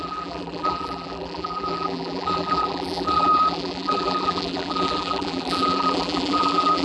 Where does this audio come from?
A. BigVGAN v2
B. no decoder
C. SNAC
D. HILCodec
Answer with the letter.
A